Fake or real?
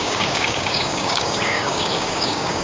fake